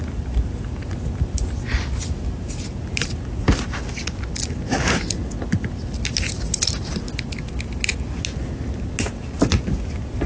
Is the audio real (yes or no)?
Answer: yes